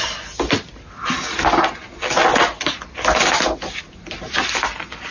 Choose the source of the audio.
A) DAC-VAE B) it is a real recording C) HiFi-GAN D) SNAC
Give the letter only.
B